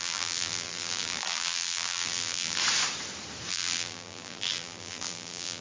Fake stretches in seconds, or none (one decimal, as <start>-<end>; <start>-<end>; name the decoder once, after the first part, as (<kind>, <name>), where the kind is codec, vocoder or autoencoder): 0.0-2.6 (vocoder, BigVGAN v2); 3.5-5.6